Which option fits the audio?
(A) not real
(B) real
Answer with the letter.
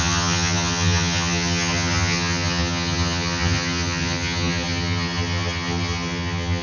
A